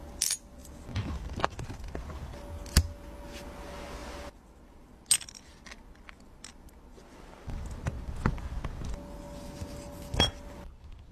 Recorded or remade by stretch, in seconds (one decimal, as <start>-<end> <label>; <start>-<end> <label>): 0.0-11.1 recorded